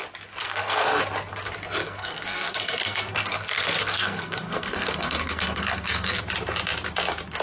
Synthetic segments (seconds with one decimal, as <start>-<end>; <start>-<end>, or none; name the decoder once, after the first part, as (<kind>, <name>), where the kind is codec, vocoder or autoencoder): 0.4-1.0 (codec, SNAC); 1.8-6.2